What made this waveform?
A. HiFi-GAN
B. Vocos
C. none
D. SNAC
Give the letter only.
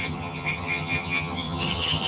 A